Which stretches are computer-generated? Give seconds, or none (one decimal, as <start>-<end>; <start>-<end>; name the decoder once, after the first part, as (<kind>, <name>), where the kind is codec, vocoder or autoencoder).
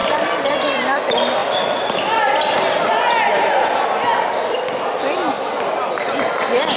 none